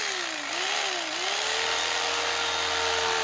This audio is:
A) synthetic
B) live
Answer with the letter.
B